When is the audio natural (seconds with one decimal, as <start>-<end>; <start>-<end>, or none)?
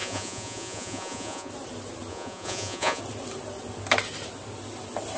1.5-2.1; 3.0-5.2